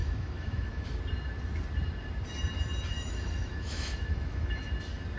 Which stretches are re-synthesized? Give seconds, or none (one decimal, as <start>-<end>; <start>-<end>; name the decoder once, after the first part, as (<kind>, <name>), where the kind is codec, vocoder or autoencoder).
0.0-1.0 (autoencoder, DAC-VAE); 2.9-4.7